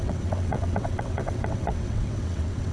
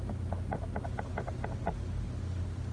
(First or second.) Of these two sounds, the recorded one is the second